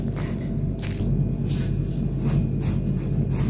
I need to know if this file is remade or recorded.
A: recorded